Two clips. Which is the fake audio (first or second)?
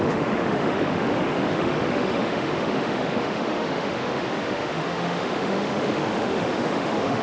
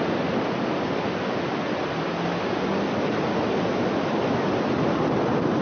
first